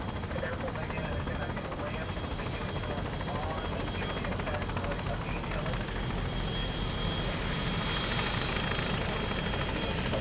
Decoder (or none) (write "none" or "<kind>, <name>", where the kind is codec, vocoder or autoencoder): none